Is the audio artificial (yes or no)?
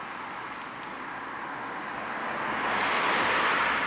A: no